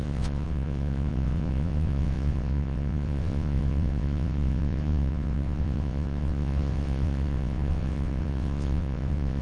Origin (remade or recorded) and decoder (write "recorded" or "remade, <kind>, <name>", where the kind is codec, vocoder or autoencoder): remade, vocoder, WaveNeXt